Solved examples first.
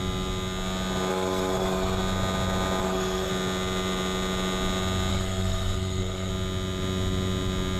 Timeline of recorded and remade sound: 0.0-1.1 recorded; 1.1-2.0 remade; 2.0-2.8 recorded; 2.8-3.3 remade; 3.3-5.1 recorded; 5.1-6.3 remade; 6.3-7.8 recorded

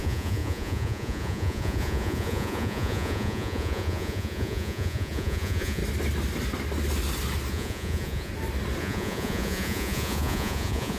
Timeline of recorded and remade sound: 0.0-5.8 remade; 5.8-7.5 recorded; 7.5-8.3 remade; 8.3-8.8 recorded; 8.8-11.0 remade

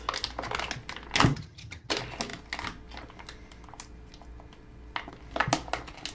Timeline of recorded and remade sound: 0.0-1.3 recorded; 1.3-1.9 remade; 1.9-6.1 recorded

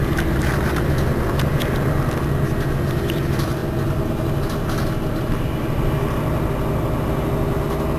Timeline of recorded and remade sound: 0.0-8.0 recorded

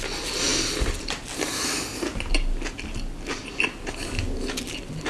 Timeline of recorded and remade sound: 0.0-5.1 recorded

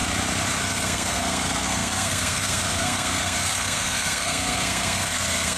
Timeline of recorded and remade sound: 0.0-0.6 recorded; 0.6-5.6 remade